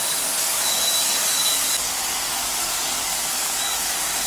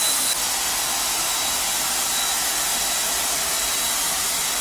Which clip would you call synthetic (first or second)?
first